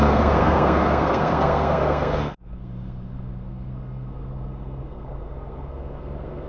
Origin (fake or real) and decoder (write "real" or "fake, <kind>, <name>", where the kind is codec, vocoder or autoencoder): fake, codec, SNAC